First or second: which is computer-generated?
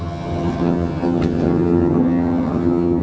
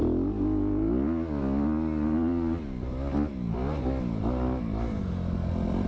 first